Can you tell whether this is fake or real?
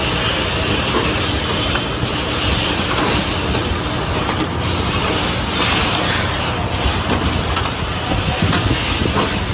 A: real